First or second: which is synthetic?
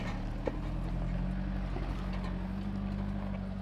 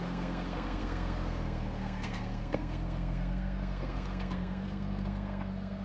second